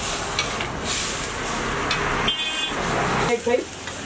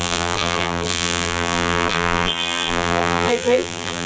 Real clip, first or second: first